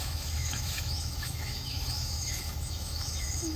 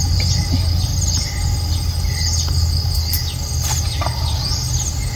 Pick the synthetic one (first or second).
first